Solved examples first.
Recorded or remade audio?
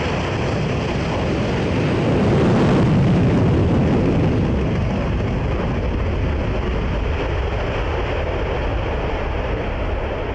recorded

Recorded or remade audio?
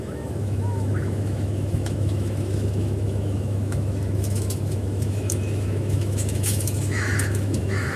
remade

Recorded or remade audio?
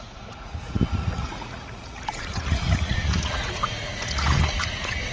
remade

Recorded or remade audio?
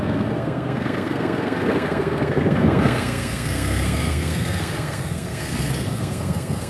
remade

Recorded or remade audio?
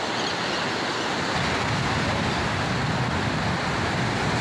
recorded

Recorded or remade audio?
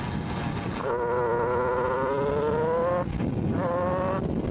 recorded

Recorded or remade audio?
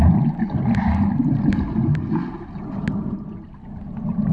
recorded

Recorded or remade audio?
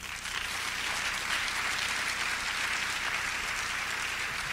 recorded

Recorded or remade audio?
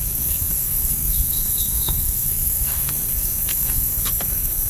remade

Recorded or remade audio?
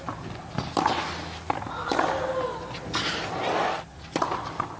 recorded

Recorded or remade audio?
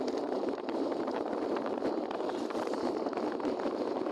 remade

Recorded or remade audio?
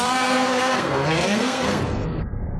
remade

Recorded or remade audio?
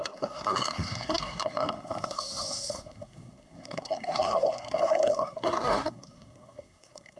remade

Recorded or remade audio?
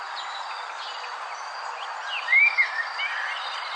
recorded